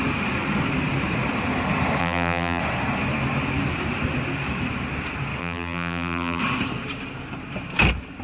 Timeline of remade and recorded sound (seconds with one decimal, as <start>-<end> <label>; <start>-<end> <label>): 0.0-2.0 recorded; 2.0-2.6 remade; 2.6-5.4 recorded; 5.4-6.4 remade; 6.4-8.2 recorded